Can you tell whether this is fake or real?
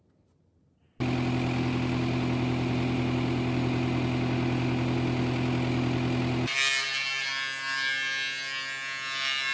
real